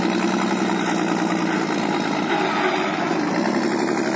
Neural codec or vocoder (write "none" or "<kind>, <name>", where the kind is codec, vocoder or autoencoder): none